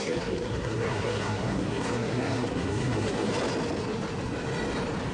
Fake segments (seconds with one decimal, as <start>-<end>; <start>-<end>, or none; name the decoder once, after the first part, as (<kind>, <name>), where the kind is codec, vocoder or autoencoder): 0.0-3.3 (codec, SNAC)